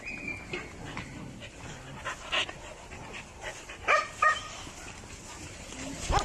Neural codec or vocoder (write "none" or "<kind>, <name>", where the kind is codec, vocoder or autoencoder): none